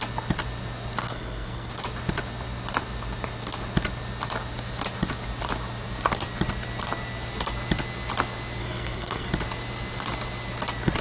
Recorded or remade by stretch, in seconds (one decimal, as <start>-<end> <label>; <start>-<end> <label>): 0.0-1.0 recorded; 1.0-1.7 remade; 1.7-8.6 recorded; 8.6-9.3 remade; 9.3-11.0 recorded